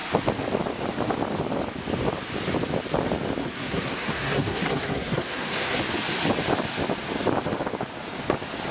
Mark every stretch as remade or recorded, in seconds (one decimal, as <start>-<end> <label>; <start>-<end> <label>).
0.0-3.4 recorded; 3.4-5.8 remade; 5.8-8.7 recorded